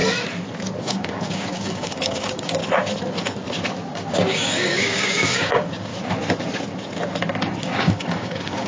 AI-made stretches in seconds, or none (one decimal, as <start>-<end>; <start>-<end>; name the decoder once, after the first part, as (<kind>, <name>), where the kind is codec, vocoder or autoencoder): 0.8-2.6 (codec, DAC); 3.9-5.9; 7.6-8.7